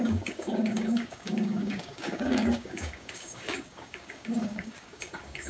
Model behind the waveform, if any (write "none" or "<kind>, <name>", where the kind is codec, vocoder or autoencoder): codec, DAC